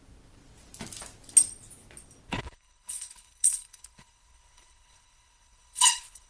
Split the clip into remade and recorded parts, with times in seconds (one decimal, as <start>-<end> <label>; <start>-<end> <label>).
0.0-2.3 recorded; 2.3-6.3 remade